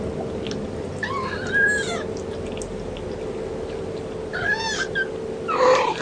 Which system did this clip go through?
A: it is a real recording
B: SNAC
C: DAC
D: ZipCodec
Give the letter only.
A